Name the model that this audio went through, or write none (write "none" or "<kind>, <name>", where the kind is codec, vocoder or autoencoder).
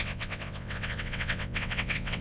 vocoder, WaveNeXt